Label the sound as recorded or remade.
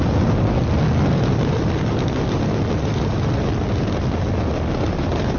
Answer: recorded